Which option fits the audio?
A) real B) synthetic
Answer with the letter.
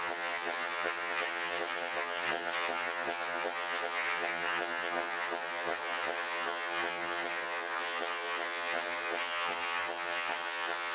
B